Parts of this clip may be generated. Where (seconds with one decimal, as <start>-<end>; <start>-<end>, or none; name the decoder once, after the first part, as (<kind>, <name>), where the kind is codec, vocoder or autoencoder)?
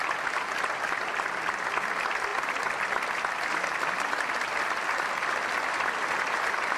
none